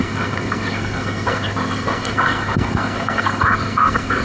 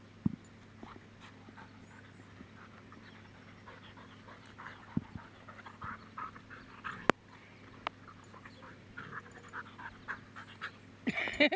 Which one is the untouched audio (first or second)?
second